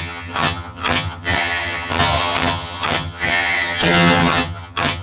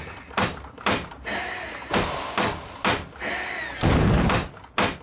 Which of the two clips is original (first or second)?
second